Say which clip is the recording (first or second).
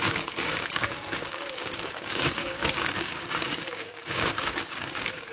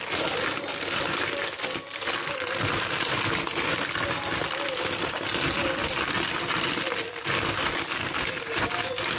second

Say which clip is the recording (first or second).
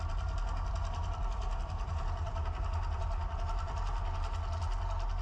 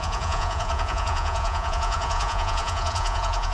first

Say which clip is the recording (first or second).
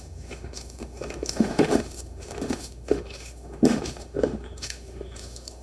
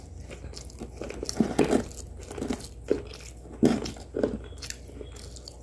second